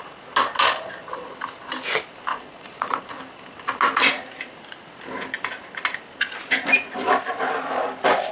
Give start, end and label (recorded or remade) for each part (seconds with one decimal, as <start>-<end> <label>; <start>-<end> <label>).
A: 0.0-2.3 recorded; 2.3-3.0 remade; 3.0-8.3 recorded